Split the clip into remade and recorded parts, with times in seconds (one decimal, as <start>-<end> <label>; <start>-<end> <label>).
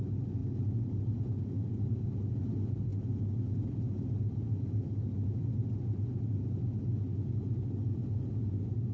0.0-8.9 recorded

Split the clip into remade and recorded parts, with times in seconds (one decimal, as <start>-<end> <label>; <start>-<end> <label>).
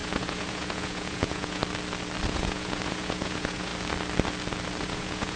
0.0-1.6 remade; 1.6-2.3 recorded; 2.3-3.7 remade; 3.7-4.8 recorded; 4.8-5.4 remade